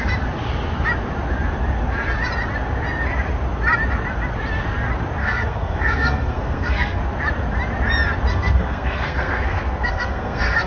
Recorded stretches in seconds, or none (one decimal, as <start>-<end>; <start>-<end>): 0.0-5.2; 7.0-8.3